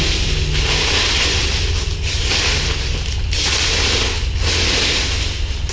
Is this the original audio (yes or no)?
yes